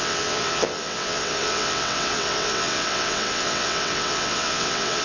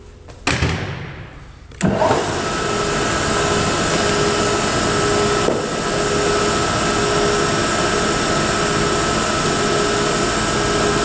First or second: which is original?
second